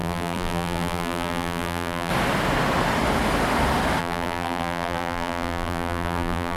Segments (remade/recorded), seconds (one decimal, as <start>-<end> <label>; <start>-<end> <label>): 0.0-2.1 remade; 2.1-4.0 recorded; 4.0-6.6 remade